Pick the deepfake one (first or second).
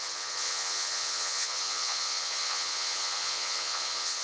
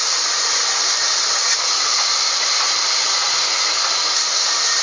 first